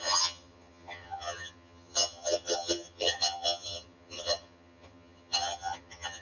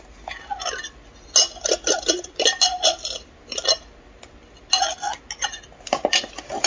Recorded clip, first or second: second